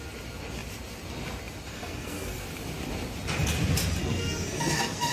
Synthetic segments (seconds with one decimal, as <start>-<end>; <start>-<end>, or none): 1.7-2.4; 4.0-5.1